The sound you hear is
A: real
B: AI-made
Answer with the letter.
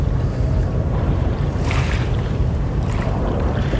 B